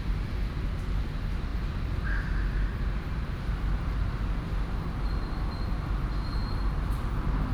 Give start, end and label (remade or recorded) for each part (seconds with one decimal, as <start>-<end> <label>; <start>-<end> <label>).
0.0-1.5 recorded; 1.5-3.5 remade; 3.5-7.5 recorded